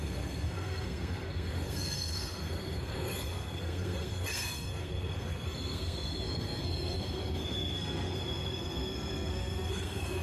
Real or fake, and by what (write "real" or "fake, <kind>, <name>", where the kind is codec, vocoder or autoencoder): fake, codec, SNAC